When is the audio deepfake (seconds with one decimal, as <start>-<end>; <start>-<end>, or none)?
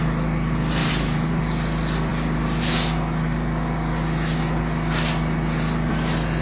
0.8-1.4